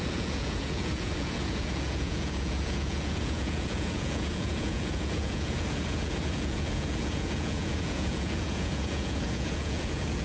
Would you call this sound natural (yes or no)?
no